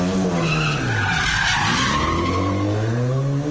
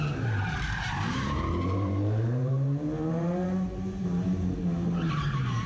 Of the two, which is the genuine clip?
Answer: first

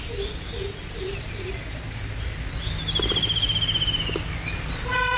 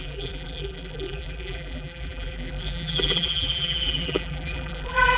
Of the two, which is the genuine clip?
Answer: first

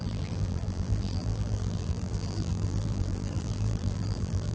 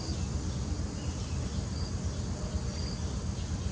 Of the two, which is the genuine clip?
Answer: second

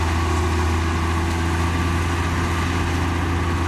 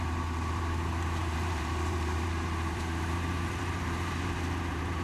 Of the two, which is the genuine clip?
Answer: first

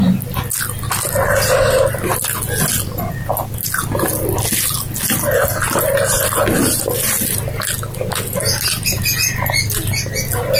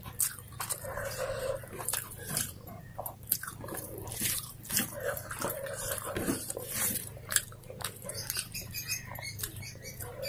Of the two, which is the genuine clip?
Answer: first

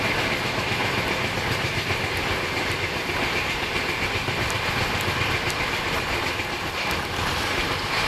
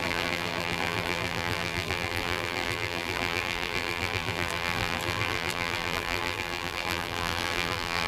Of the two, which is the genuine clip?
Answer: first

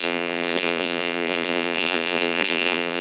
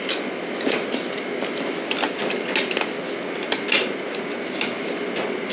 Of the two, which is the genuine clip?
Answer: second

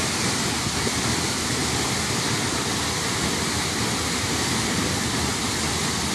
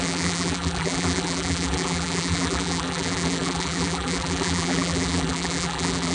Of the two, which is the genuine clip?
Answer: first